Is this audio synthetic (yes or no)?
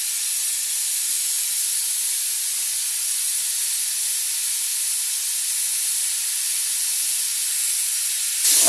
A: no